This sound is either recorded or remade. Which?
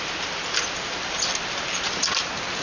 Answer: recorded